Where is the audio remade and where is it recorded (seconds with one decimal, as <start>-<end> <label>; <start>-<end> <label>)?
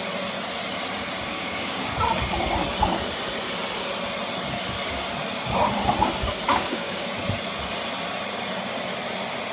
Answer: 0.0-1.3 recorded; 1.3-2.0 remade; 2.0-6.5 recorded; 6.5-7.1 remade; 7.1-9.5 recorded